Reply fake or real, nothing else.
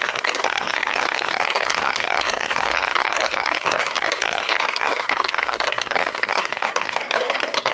fake